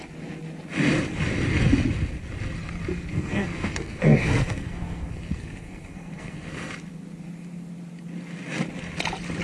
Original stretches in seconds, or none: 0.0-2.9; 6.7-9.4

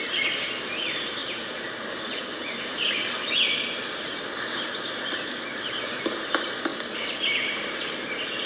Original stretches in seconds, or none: 0.0-1.2; 1.8-8.5

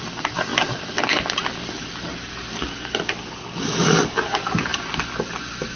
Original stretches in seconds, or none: 0.0-5.8

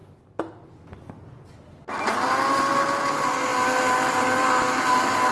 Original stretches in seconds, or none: 0.0-5.3